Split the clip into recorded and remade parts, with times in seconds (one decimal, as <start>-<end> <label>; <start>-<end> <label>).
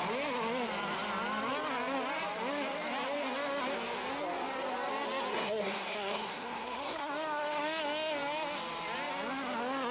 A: 0.0-5.3 recorded; 5.3-7.1 remade; 7.1-9.9 recorded